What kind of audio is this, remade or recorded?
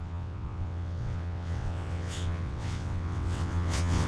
remade